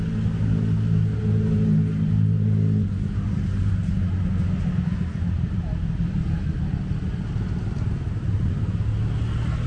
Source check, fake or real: real